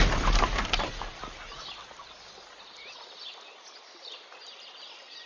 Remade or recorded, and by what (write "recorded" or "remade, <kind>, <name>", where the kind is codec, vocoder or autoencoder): recorded